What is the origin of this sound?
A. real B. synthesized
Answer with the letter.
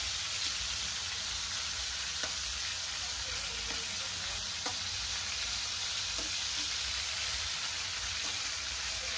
A